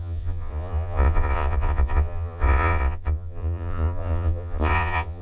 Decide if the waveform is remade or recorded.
remade